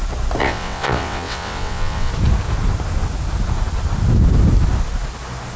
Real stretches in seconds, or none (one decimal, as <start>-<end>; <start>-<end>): 0.0-0.4; 2.1-5.6